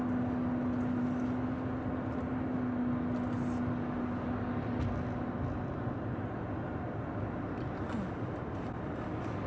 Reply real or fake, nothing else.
real